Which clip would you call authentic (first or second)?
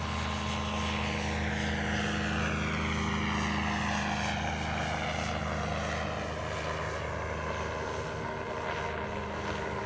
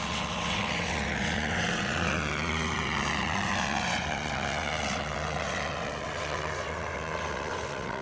first